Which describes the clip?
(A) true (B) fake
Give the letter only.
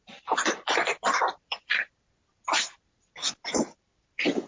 B